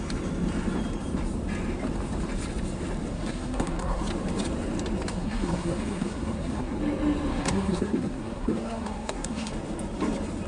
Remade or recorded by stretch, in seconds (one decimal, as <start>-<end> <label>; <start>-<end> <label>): 0.0-3.1 recorded; 3.1-4.0 remade; 4.0-5.1 recorded; 5.1-6.8 remade; 6.8-7.3 recorded; 7.3-9.5 remade; 9.5-10.5 recorded